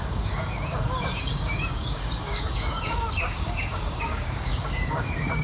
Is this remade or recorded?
remade